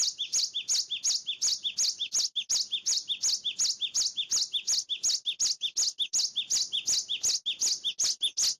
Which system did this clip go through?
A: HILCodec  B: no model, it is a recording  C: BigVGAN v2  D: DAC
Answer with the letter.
B